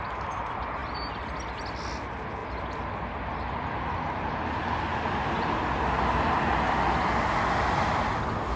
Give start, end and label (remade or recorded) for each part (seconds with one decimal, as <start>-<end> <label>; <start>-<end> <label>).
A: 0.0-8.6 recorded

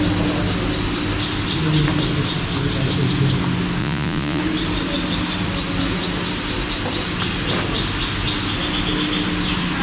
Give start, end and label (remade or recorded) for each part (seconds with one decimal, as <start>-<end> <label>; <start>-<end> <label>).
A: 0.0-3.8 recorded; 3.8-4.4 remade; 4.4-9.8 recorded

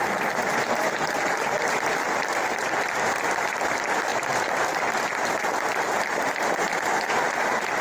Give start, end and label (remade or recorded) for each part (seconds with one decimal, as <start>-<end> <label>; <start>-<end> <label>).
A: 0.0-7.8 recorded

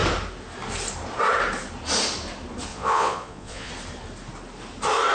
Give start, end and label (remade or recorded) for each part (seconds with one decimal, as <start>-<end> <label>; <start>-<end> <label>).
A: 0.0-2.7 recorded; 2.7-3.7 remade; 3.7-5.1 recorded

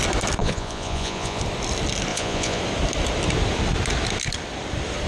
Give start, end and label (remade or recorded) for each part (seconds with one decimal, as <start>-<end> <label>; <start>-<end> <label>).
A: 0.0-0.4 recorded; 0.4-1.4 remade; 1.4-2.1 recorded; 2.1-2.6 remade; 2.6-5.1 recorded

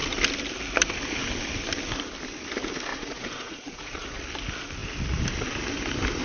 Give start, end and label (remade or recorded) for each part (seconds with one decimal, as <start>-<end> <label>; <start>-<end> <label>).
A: 0.0-2.9 recorded; 2.9-4.2 remade; 4.2-6.2 recorded